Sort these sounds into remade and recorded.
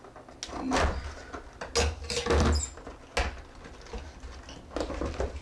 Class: recorded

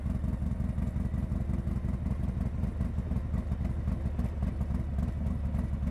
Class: recorded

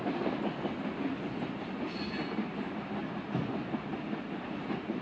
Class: recorded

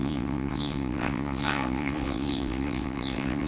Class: remade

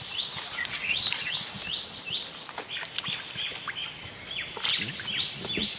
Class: recorded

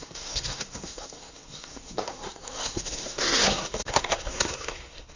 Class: remade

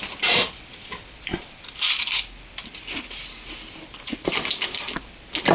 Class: recorded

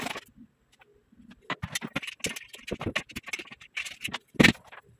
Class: recorded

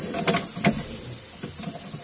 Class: recorded